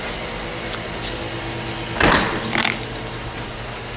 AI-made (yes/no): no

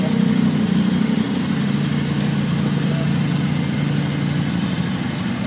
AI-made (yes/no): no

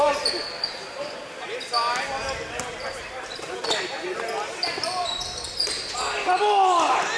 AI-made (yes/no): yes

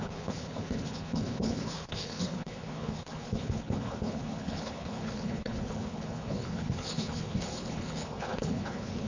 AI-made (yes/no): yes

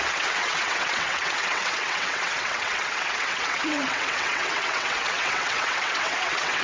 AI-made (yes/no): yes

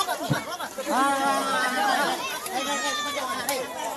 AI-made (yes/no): no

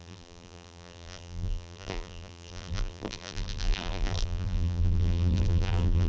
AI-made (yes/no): yes